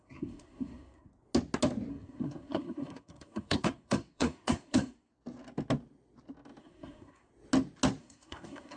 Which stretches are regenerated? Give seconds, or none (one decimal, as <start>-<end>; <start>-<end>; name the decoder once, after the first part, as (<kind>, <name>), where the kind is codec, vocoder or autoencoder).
0.0-1.1 (codec, SNAC); 1.9-5.1; 6.6-7.3; 8.0-8.8